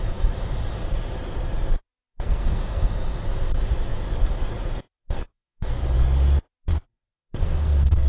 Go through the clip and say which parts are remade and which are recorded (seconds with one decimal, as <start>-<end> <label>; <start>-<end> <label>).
0.0-2.1 recorded; 2.1-2.9 remade; 2.9-5.0 recorded; 5.0-5.8 remade; 5.8-6.7 recorded; 6.7-8.1 remade